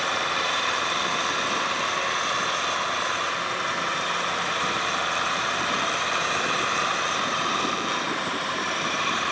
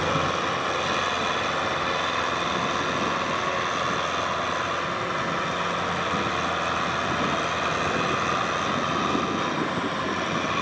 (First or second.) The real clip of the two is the second